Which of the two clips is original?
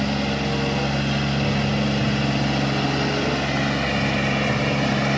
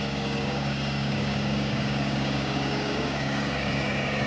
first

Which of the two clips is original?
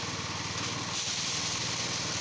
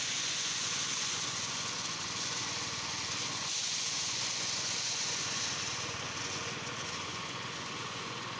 first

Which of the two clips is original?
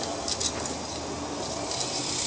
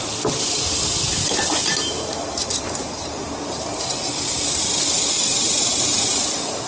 first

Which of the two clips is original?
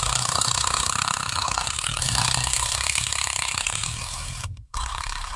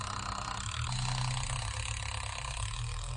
second